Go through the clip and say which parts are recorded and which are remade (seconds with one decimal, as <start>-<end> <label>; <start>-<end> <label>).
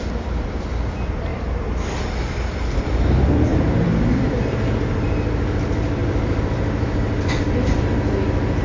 0.0-3.5 recorded; 3.5-4.8 remade; 4.8-6.0 recorded; 6.0-7.9 remade; 7.9-8.6 recorded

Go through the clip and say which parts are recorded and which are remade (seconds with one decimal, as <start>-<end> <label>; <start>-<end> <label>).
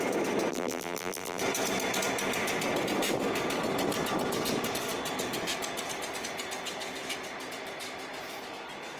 0.0-0.5 recorded; 0.5-1.4 remade; 1.4-9.0 recorded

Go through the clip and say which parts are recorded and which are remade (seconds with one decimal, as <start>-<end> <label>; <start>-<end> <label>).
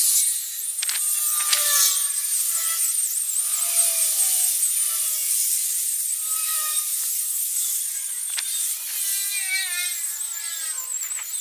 0.0-5.2 recorded; 5.2-6.8 remade; 6.8-11.4 recorded